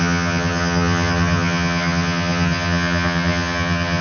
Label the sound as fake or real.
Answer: fake